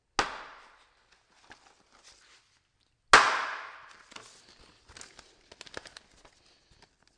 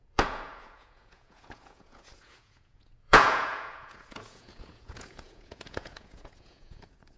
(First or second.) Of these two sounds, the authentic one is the first